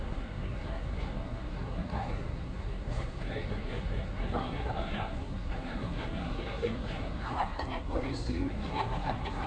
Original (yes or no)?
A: no